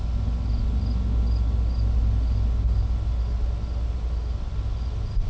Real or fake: real